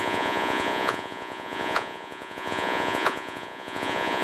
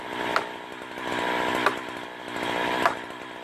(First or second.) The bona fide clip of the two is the second